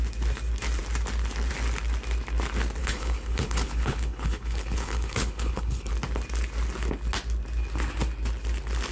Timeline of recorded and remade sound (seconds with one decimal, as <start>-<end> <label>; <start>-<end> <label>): 0.0-2.8 recorded; 2.8-5.9 remade; 5.9-8.9 recorded